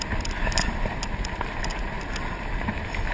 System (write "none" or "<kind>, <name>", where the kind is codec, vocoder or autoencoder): none